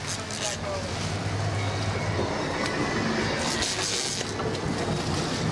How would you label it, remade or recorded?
recorded